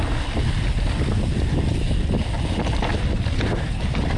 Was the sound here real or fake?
real